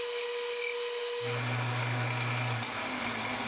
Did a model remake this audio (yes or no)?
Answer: no